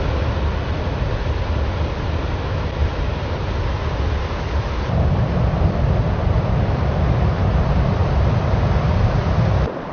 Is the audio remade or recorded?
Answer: recorded